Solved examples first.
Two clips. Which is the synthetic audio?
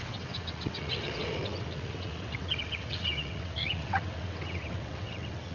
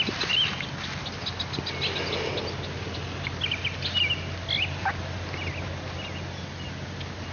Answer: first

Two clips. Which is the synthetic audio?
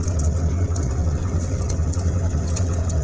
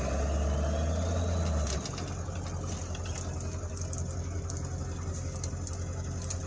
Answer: first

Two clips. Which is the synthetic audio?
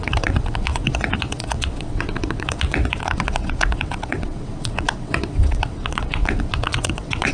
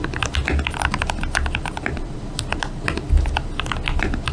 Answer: first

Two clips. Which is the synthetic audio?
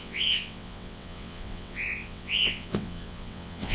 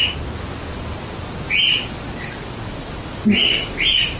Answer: first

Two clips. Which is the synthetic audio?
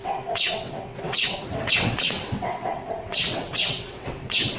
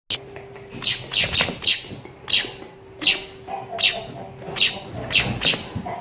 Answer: first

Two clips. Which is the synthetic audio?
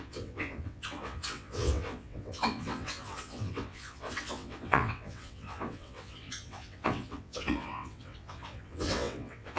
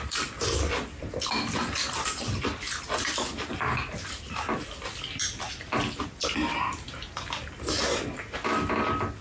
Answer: first